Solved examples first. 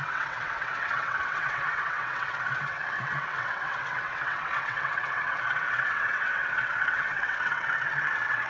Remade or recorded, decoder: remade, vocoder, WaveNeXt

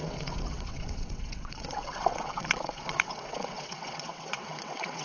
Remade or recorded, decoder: remade, vocoder, WaveNeXt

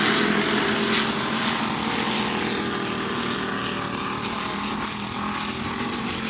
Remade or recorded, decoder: recorded